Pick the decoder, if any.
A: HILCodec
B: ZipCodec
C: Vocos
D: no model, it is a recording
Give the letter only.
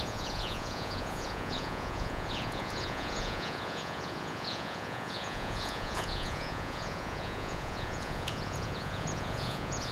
C